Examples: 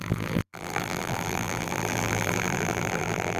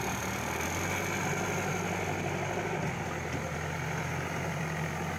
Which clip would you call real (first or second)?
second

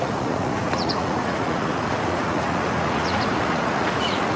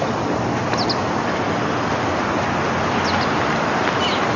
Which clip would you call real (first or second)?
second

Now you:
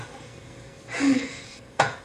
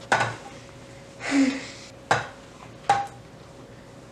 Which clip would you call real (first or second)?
second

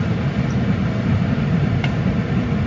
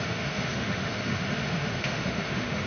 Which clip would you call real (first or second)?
first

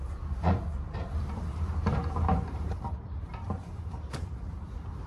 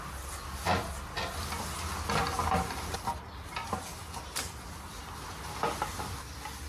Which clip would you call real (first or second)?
second